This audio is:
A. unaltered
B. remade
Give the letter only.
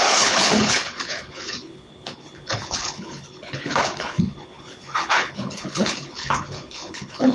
B